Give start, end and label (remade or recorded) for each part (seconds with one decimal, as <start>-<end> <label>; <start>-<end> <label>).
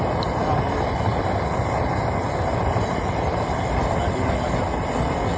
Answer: 0.0-5.4 recorded